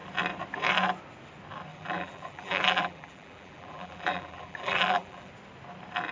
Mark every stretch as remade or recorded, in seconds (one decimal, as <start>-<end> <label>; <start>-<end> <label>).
0.0-1.7 recorded; 1.7-5.3 remade; 5.3-6.1 recorded